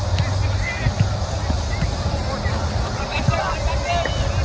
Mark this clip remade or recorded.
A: recorded